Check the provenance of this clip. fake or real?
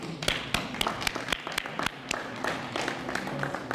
real